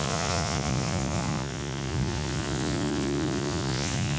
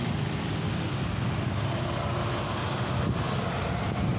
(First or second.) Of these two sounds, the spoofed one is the first